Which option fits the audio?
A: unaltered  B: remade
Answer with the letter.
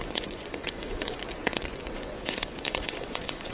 B